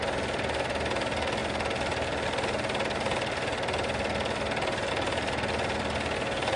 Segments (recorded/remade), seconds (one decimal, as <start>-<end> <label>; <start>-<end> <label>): 0.0-6.6 recorded